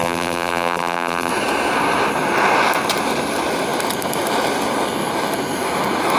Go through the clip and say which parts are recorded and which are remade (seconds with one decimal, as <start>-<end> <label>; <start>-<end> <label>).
0.0-1.3 remade; 1.3-6.2 recorded